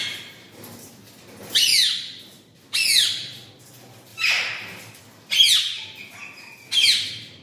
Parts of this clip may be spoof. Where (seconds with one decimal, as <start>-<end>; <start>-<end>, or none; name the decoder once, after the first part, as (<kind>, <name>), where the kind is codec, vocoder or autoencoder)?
4.1-5.0 (vocoder, BigVGAN v2)